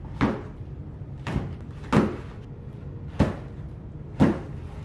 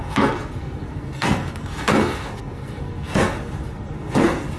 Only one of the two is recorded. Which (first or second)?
first